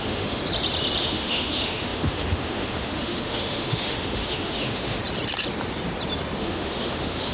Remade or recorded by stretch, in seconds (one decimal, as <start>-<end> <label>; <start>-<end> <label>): 0.0-0.4 remade; 0.4-1.0 recorded; 1.0-5.0 remade; 5.0-6.4 recorded; 6.4-7.3 remade